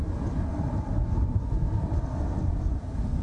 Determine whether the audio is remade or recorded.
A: recorded